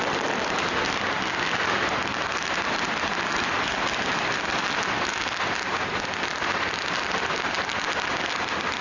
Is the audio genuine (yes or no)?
yes